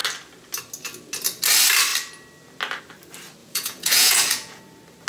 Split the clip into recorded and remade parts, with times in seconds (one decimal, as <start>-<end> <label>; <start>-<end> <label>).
0.0-3.4 recorded; 3.4-4.6 remade; 4.6-5.1 recorded